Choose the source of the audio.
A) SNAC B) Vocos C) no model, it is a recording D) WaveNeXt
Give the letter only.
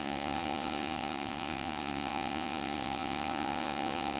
D